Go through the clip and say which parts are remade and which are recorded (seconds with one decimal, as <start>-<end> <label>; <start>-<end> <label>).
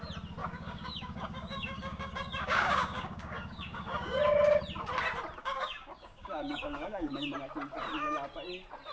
0.0-0.4 recorded; 0.4-4.2 remade; 4.2-5.4 recorded; 5.4-7.3 remade; 7.3-8.9 recorded